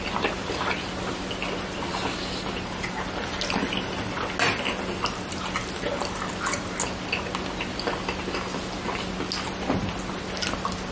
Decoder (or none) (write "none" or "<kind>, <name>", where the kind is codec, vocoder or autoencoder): none